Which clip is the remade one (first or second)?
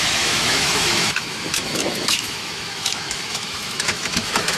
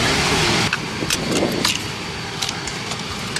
first